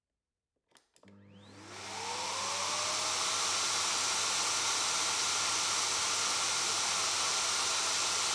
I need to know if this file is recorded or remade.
recorded